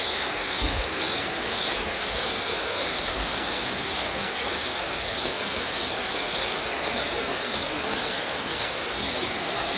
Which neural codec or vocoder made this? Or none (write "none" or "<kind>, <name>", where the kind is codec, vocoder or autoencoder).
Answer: codec, SNAC